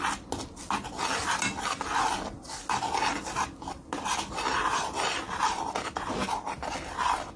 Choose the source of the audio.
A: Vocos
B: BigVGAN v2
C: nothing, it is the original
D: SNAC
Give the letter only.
C